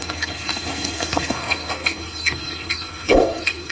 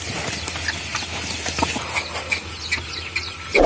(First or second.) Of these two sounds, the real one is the second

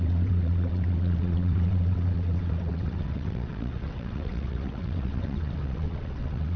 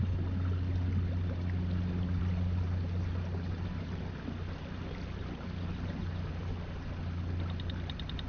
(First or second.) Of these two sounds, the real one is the second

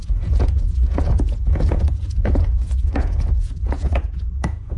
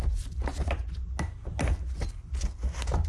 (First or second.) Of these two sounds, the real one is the second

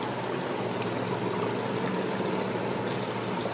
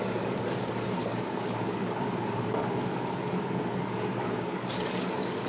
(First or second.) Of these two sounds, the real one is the first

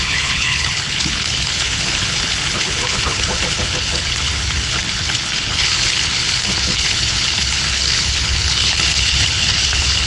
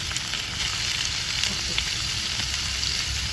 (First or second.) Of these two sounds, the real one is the second